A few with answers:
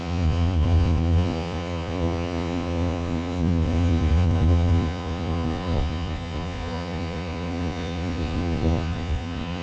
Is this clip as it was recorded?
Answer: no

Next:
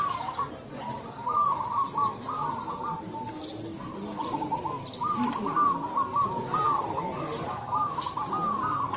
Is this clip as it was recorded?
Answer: yes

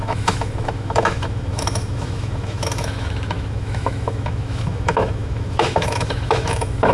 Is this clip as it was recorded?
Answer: no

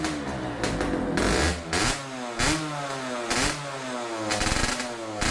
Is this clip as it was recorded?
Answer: yes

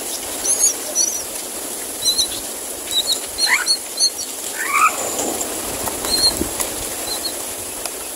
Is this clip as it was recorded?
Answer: yes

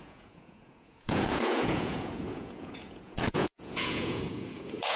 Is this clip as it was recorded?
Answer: no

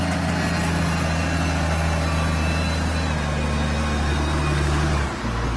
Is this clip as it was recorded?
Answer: yes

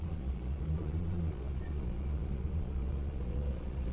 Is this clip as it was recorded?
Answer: no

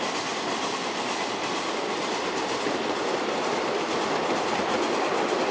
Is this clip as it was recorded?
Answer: yes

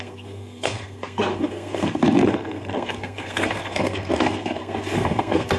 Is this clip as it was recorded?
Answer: no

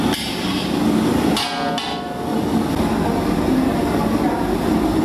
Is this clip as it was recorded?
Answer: yes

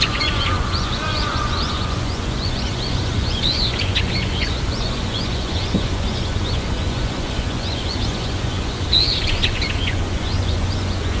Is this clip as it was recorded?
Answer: no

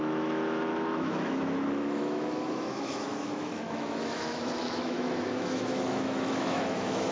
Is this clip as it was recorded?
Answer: no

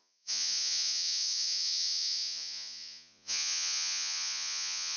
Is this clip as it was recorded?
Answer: no